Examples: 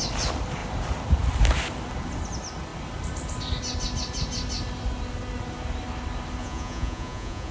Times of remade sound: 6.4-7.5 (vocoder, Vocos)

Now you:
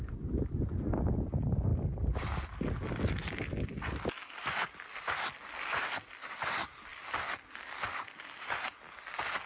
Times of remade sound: none

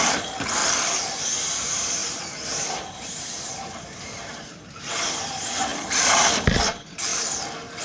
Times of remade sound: 0.0-0.6 (vocoder, BigVGAN v2); 1.2-5.7; 6.6-7.1

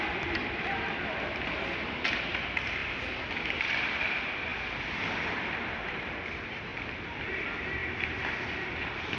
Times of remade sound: 0.0-9.2 (vocoder, BigVGAN v2)

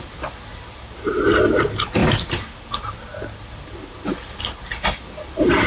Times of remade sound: 0.5-1.1 (vocoder, BigVGAN v2)

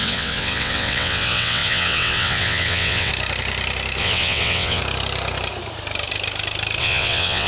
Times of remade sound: 0.0-3.1 (vocoder, WaveNeXt); 4.0-4.8; 6.8-7.5